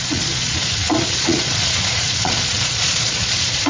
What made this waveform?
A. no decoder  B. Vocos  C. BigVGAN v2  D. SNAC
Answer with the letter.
B